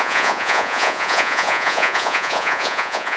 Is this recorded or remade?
remade